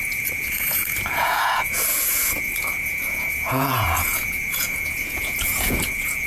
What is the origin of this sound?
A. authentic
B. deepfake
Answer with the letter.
B